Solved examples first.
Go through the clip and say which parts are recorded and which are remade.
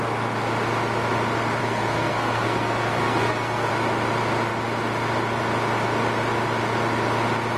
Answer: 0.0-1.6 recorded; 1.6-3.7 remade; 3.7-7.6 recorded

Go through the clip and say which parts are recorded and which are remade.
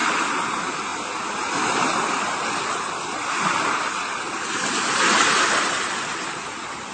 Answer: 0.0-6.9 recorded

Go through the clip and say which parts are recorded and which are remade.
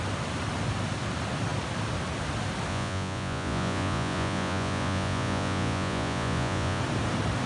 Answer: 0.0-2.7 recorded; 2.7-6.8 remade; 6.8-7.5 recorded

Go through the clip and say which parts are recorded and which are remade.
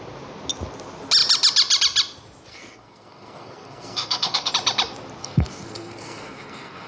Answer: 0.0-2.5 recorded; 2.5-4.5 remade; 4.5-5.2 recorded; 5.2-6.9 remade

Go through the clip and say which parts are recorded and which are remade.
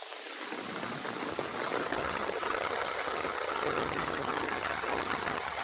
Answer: 0.0-1.9 recorded; 1.9-5.6 remade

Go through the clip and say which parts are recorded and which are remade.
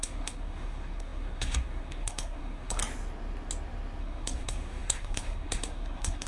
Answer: 0.0-2.8 remade; 2.8-4.0 recorded; 4.0-6.3 remade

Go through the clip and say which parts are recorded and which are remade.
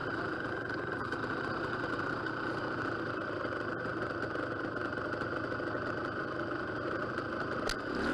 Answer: 0.0-8.1 recorded